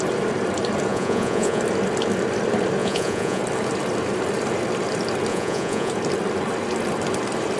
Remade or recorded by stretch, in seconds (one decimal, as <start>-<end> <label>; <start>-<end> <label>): 0.0-0.9 recorded; 0.9-1.6 remade; 1.6-2.8 recorded; 2.8-3.4 remade; 3.4-5.3 recorded; 5.3-5.9 remade; 5.9-7.6 recorded